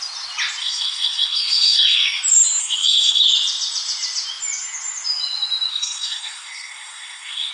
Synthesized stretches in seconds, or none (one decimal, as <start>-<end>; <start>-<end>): 0.6-2.2; 2.6-3.2; 5.7-7.5

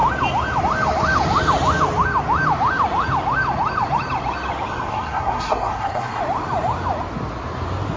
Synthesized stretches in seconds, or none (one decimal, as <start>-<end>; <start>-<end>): 4.9-6.2

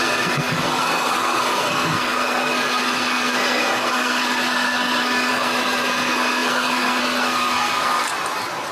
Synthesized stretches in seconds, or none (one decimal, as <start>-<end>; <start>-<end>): 0.0-8.1

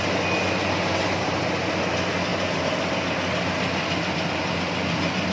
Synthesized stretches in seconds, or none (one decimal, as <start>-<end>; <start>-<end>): none

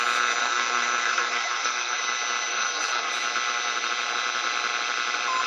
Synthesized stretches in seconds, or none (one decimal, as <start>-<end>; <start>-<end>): 0.4-2.0; 2.5-3.1

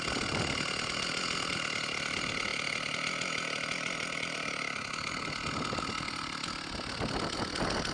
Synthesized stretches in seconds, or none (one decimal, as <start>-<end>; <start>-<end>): none

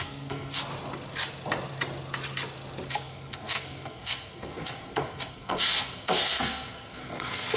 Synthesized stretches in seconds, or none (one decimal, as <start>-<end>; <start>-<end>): 0.0-0.7; 2.9-7.6